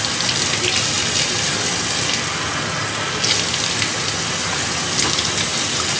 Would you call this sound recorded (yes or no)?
yes